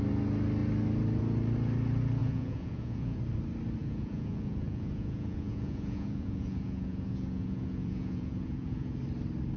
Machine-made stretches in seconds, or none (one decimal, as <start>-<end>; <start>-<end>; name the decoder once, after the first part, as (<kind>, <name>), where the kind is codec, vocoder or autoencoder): 2.2-3.2 (vocoder, Vocos); 3.8-9.0